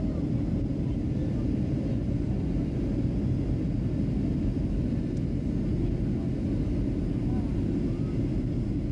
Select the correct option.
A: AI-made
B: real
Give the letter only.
B